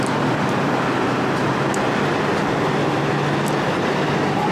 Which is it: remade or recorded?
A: recorded